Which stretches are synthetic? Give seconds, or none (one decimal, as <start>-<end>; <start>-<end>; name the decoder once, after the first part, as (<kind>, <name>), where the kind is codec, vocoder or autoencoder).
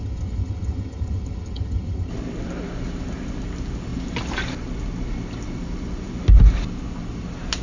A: 0.0-2.1 (vocoder, HiFi-GAN)